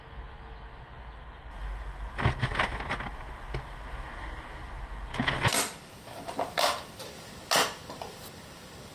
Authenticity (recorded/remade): recorded